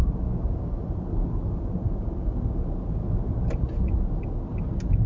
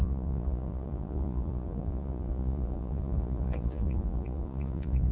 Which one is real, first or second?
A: first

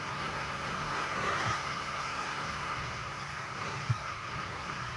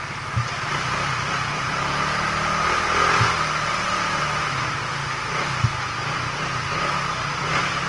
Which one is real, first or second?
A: second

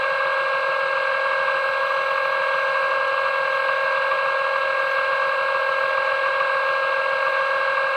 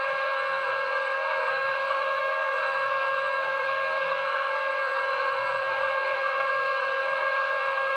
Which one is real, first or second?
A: first